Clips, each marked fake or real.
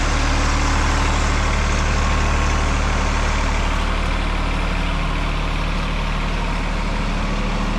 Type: real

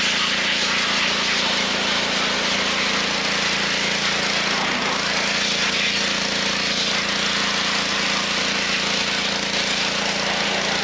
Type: real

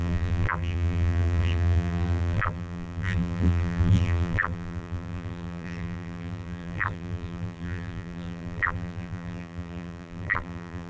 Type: fake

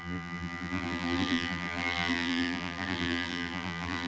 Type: fake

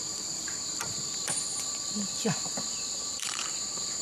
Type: fake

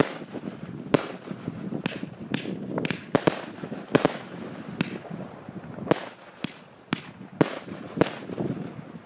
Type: real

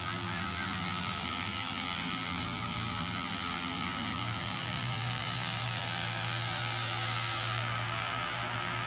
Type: fake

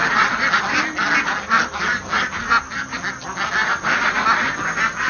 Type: real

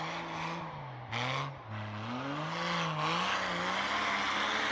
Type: real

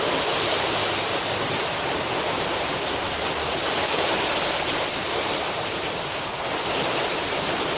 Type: fake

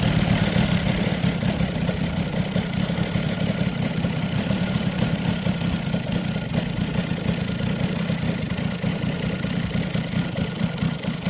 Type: fake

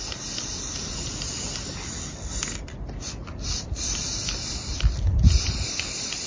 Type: fake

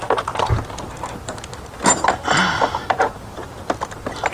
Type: real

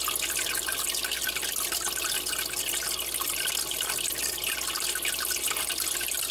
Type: real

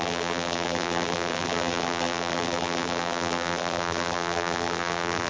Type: fake